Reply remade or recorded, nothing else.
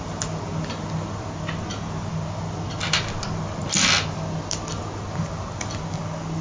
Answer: recorded